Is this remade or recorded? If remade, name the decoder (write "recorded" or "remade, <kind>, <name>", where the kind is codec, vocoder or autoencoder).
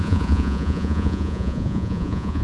remade, vocoder, Vocos